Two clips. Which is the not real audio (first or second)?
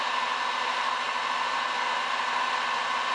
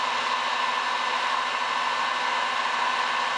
first